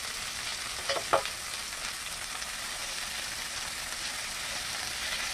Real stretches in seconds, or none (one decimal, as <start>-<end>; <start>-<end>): 0.0-5.3

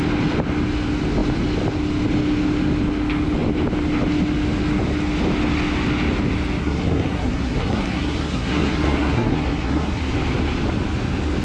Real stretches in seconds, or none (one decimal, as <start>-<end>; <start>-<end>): 0.0-6.6; 10.0-11.4

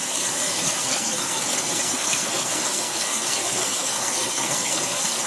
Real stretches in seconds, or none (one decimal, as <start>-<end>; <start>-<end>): none

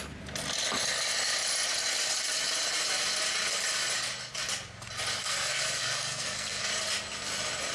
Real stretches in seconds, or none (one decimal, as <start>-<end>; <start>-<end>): 0.0-5.2; 6.7-7.7

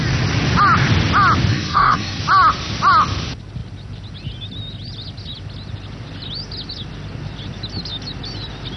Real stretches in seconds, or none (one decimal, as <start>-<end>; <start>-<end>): 0.0-1.5; 2.2-8.8